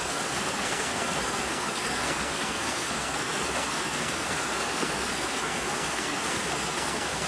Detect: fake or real fake